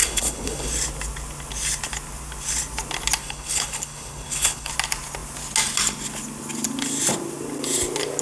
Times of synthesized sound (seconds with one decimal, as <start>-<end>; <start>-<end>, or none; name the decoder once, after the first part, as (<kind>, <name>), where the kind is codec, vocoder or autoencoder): 0.0-0.7 (codec, HILCodec); 3.2-4.7